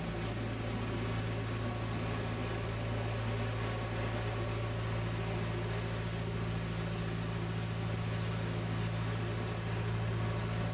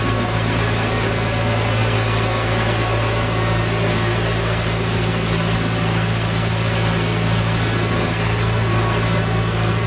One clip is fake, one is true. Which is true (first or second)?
first